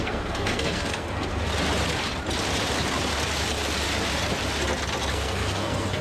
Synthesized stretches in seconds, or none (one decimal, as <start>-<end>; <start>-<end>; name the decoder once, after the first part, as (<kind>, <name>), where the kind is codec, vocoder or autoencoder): 0.0-1.5 (codec, SNAC); 5.1-6.0